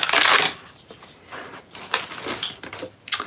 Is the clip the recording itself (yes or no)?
yes